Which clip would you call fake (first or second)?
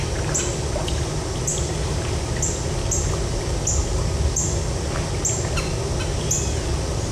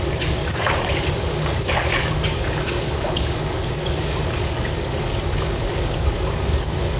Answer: second